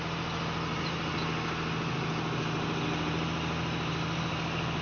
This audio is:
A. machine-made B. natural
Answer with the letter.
B